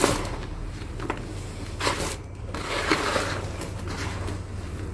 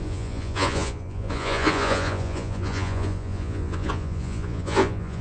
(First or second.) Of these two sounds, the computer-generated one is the second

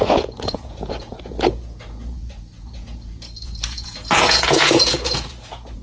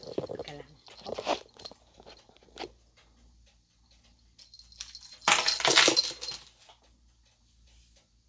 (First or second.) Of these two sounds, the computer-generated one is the first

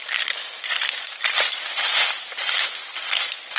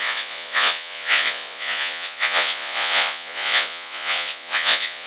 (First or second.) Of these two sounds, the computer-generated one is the second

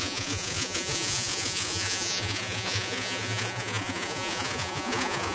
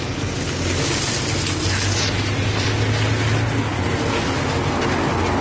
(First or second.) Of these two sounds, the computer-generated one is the first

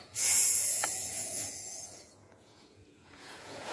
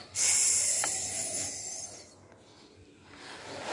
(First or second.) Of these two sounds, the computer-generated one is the first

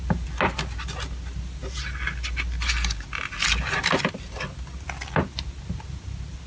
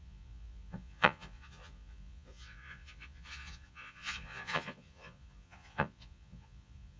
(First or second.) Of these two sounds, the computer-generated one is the second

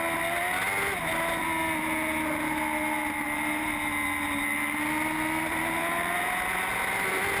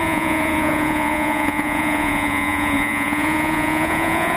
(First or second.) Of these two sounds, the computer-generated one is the second